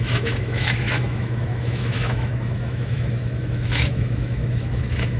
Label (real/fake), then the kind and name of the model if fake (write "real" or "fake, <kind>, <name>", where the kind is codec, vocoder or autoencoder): fake, autoencoder, DAC-VAE